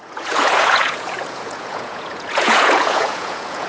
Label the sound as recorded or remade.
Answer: remade